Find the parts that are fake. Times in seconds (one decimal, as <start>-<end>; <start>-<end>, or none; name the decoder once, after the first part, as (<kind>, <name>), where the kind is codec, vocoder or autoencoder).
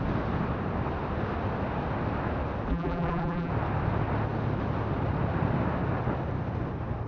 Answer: 2.7-3.5 (vocoder, BigVGAN v2)